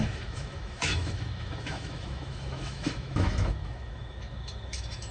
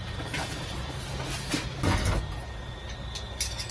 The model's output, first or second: first